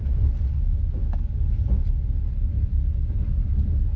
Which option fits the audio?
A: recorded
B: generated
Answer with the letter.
A